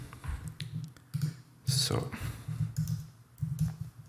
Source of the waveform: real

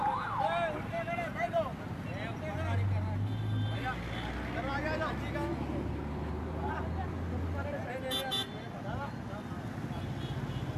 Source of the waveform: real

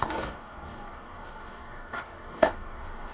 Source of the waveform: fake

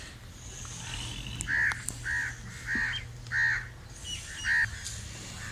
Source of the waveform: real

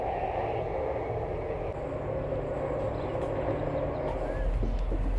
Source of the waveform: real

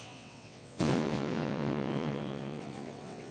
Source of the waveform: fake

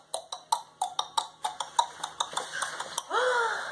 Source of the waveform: real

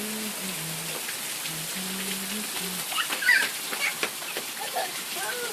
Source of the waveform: real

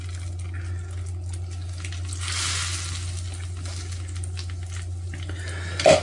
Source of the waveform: real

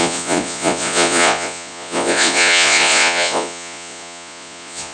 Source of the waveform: fake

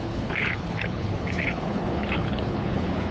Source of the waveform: fake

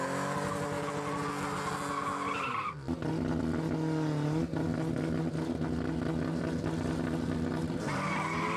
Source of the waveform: real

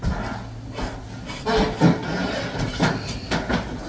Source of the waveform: real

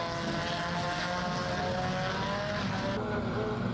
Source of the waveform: real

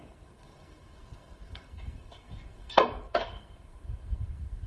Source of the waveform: fake